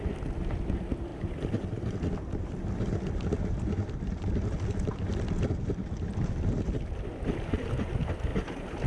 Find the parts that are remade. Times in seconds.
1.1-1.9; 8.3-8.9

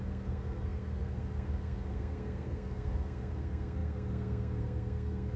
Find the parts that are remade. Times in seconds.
0.0-5.4

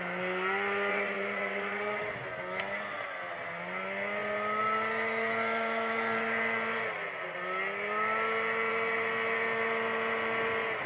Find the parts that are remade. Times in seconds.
0.9-2.0

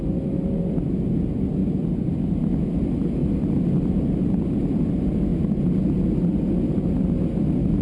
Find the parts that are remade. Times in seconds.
none

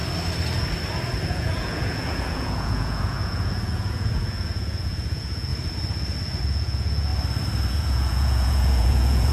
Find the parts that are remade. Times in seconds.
1.3-5.5; 6.4-7.1; 7.7-9.3

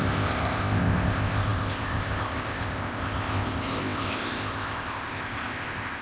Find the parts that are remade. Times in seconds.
0.0-6.0

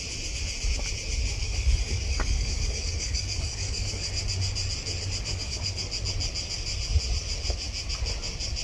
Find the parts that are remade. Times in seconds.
1.4-4.0; 5.3-5.9

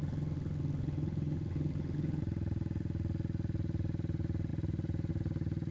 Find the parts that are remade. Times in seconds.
0.0-2.2